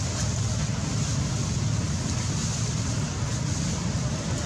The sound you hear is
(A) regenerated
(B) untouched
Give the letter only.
B